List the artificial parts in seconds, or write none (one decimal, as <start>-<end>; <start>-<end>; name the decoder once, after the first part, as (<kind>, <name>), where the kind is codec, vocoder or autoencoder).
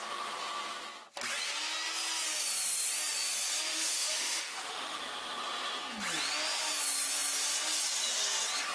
3.7-5.0 (autoencoder, DAC-VAE)